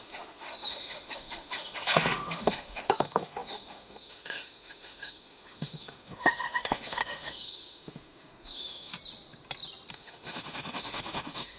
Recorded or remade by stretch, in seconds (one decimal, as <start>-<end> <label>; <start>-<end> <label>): 0.0-8.9 remade; 8.9-9.9 recorded; 9.9-11.6 remade